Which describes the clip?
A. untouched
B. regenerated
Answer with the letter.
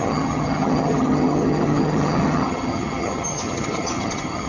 B